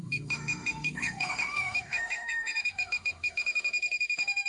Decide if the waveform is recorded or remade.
remade